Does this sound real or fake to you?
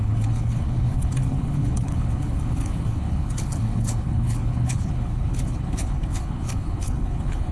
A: fake